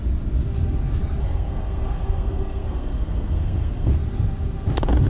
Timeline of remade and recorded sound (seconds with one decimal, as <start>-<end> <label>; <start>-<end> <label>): 0.0-1.2 recorded; 1.2-3.9 remade; 3.9-5.1 recorded